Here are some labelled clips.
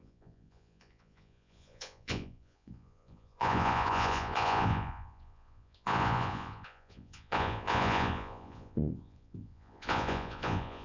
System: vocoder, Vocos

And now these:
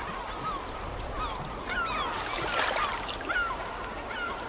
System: none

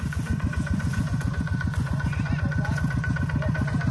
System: vocoder, Vocos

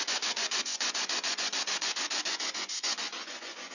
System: vocoder, Vocos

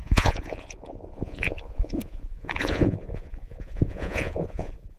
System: vocoder, Vocos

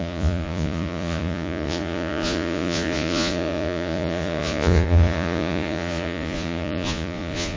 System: vocoder, Vocos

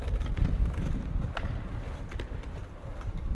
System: none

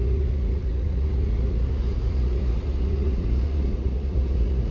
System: vocoder, Vocos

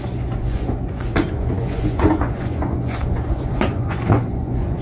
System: vocoder, Vocos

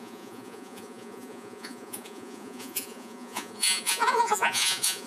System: vocoder, Vocos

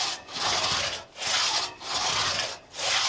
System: none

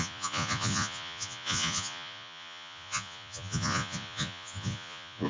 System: vocoder, Vocos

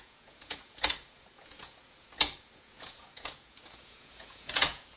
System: vocoder, Vocos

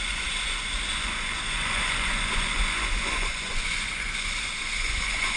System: vocoder, Vocos